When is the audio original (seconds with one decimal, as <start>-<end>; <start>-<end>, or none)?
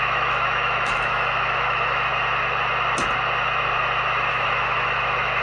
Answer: 2.1-4.3